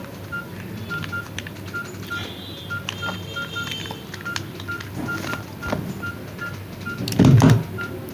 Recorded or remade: recorded